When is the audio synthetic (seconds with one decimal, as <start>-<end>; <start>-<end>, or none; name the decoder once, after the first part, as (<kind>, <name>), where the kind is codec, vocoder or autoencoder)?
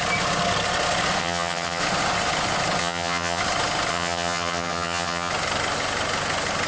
1.2-1.8 (vocoder, HiFi-GAN); 2.8-3.4; 3.9-5.3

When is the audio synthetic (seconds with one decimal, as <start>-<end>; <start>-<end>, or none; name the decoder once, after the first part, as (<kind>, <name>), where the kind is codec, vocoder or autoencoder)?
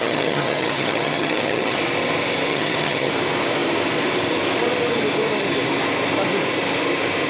0.0-1.8 (vocoder, HiFi-GAN); 2.5-3.1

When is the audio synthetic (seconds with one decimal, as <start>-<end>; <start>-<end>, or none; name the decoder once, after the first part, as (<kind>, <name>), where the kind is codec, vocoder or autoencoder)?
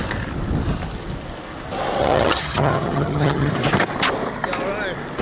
2.0-3.5 (vocoder, HiFi-GAN)